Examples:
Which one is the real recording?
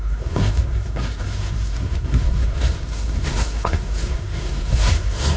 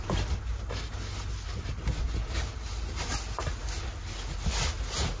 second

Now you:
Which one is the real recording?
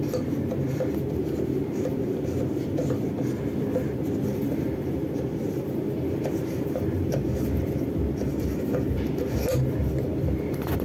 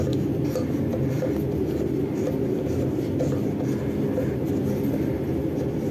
second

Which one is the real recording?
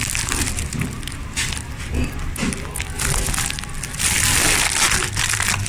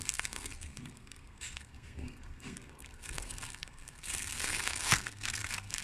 first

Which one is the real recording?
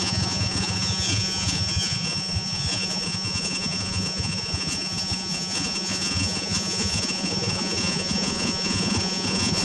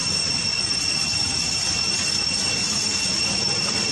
second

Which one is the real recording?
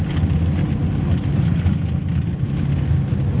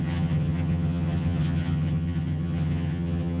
first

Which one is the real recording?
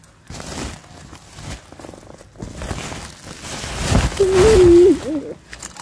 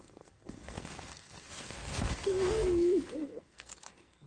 first